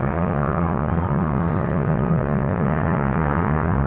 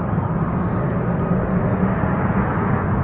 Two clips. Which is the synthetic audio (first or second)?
first